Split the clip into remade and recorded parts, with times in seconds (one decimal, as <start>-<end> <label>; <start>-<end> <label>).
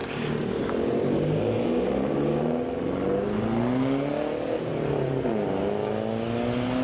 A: 0.0-2.4 remade; 2.4-6.8 recorded